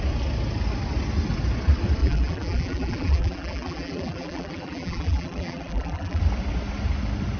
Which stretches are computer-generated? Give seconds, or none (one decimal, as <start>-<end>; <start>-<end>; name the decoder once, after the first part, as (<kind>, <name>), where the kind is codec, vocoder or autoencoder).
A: 2.0-6.2 (vocoder, BigVGAN v2)